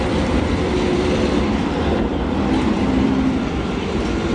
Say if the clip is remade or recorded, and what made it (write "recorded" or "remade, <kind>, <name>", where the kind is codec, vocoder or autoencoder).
remade, vocoder, BigVGAN v2